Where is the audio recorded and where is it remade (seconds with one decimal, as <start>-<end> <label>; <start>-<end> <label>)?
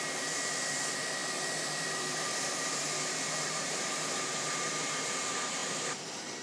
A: 0.0-6.4 remade